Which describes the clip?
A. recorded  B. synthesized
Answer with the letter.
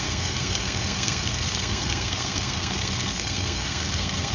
B